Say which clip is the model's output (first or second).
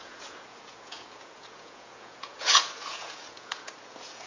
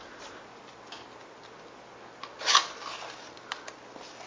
first